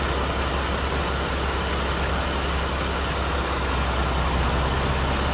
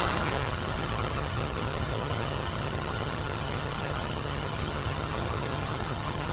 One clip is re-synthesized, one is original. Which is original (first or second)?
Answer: first